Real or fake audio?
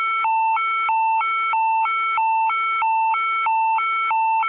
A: real